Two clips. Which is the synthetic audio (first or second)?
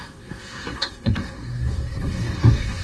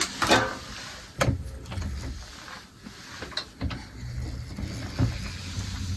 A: first